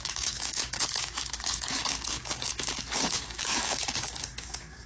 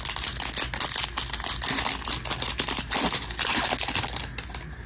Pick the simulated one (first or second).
first